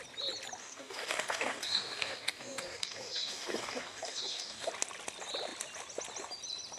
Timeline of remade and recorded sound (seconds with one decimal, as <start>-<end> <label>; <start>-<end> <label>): 0.0-0.6 recorded; 0.6-4.7 remade; 4.7-6.8 recorded